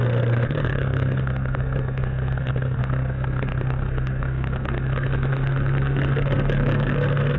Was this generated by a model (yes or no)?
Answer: yes